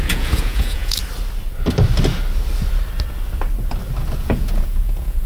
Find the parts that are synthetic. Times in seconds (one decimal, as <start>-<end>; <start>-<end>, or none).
0.0-1.0; 4.2-5.3